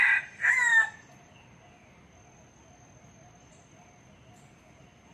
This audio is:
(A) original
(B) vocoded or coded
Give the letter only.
A